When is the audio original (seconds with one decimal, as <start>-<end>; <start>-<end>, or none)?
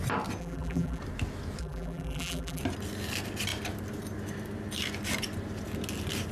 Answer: 0.0-0.4; 1.0-1.6; 2.6-6.3